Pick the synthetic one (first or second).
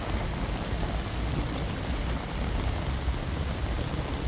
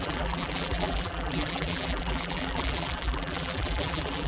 second